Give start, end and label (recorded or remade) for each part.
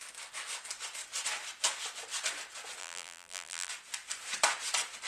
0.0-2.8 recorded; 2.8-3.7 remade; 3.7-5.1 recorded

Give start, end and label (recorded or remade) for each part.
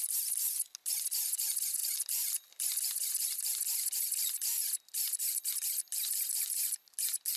0.0-7.4 recorded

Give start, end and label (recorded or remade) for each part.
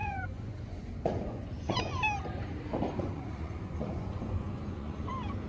0.0-2.0 remade; 2.0-3.0 recorded; 3.0-5.1 remade; 5.1-5.5 recorded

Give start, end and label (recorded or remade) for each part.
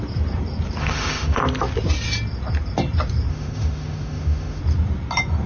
0.0-0.8 recorded; 0.8-1.4 remade; 1.4-3.3 recorded; 3.3-4.6 remade; 4.6-5.5 recorded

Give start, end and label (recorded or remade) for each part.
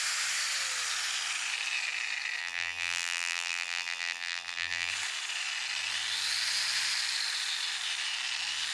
0.0-2.4 recorded; 2.4-4.9 remade; 4.9-8.7 recorded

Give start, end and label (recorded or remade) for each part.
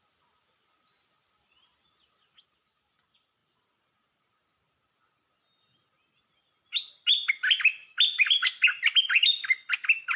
0.0-10.2 recorded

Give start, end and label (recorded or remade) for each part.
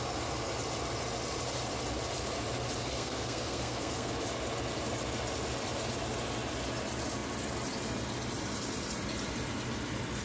0.0-2.8 recorded; 2.8-4.1 remade; 4.1-10.2 recorded